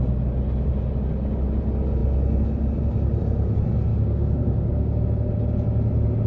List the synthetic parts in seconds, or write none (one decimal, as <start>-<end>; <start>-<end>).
3.9-5.0